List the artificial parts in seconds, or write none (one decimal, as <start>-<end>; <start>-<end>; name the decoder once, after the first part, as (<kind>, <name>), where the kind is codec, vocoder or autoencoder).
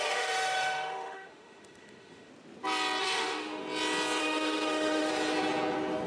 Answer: 0.0-2.3 (autoencoder, DAC-VAE); 3.0-3.6; 4.2-5.1